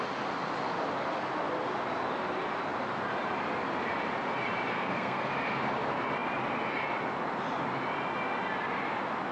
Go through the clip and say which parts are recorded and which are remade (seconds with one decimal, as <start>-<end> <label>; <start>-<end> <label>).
0.0-4.7 recorded; 4.7-5.3 remade; 5.3-9.3 recorded